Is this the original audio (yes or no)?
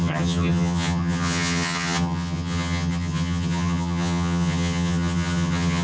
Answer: no